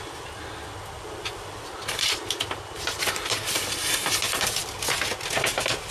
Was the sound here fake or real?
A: real